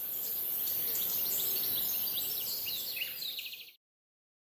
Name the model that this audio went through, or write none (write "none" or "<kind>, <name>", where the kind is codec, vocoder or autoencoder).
none